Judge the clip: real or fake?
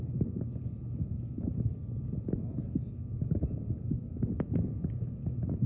fake